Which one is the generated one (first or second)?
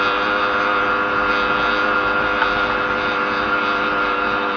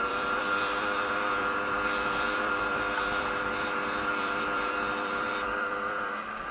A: second